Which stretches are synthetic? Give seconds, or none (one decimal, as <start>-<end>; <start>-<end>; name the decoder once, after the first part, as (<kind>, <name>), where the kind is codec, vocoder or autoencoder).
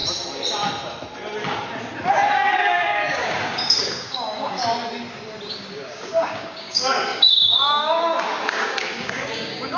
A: 2.1-4.6 (codec, DAC); 5.6-9.8